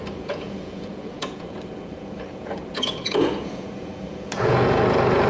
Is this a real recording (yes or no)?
no